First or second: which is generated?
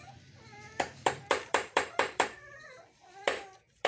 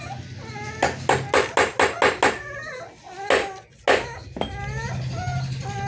first